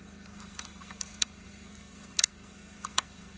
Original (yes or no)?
no